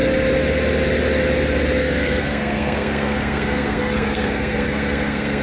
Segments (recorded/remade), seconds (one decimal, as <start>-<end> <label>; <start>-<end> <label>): 0.0-1.8 recorded; 1.8-5.4 remade